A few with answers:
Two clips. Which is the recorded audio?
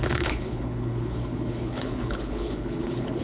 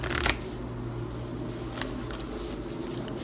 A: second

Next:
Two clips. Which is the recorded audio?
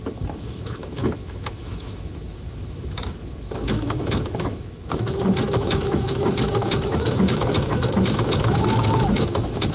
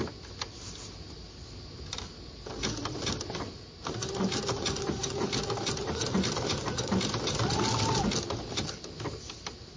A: second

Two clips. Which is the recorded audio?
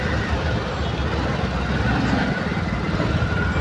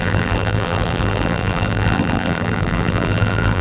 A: first